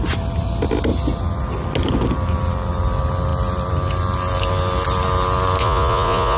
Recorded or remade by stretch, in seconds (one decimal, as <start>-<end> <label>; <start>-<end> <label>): 0.0-5.6 recorded; 5.6-6.4 remade